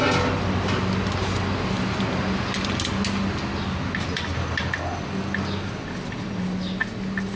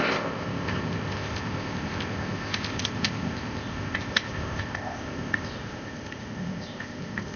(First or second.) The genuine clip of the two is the first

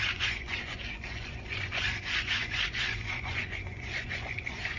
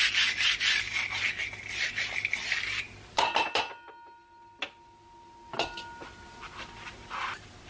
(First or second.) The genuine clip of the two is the second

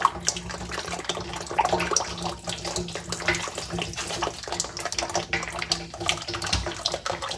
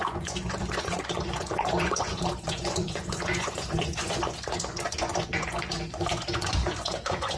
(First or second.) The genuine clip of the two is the first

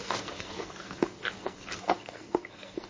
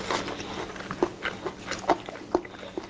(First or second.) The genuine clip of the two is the second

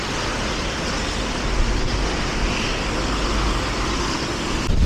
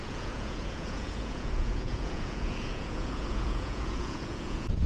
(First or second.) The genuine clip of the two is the first